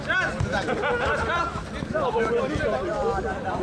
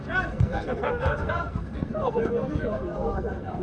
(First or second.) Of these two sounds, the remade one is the second